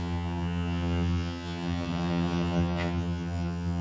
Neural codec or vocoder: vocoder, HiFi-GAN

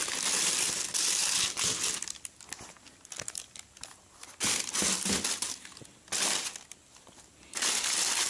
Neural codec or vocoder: none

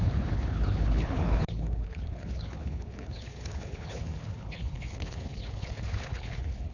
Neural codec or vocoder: codec, HILCodec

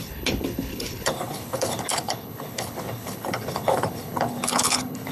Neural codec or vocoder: codec, HILCodec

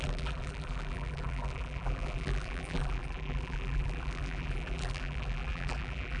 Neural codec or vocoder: vocoder, BigVGAN v2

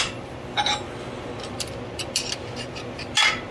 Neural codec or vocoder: none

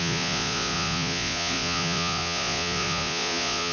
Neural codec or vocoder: vocoder, Vocos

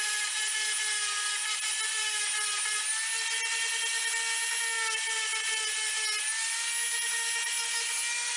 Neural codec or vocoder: none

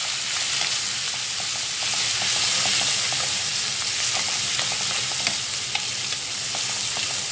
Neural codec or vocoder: none